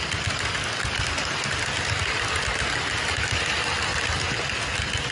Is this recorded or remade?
recorded